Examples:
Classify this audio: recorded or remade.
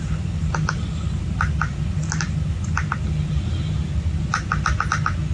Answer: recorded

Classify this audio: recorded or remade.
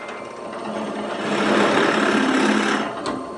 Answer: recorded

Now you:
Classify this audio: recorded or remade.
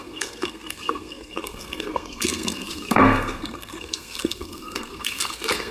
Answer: remade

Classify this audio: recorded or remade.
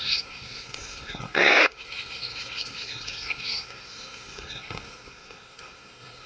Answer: remade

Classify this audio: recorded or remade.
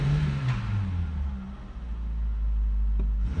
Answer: recorded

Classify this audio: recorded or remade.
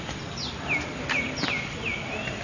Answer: recorded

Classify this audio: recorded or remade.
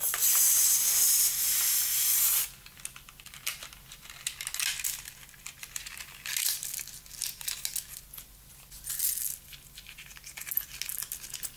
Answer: recorded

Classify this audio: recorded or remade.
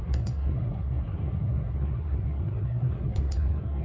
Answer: remade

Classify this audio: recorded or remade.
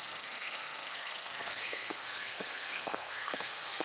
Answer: remade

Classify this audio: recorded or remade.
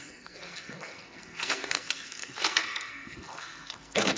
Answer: remade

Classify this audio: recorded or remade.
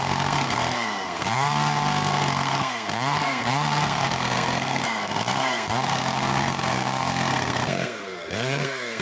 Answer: remade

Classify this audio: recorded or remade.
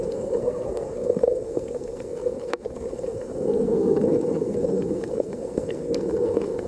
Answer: remade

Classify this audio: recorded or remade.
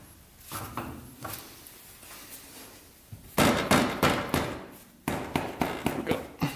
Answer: recorded